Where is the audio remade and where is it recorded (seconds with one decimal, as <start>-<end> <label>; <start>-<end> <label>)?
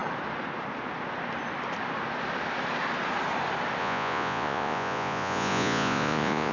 0.0-3.8 recorded; 3.8-6.5 remade